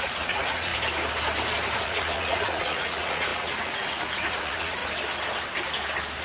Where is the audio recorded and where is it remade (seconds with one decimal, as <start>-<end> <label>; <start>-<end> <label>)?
0.0-0.7 remade; 0.7-1.8 recorded; 1.8-4.8 remade; 4.8-6.2 recorded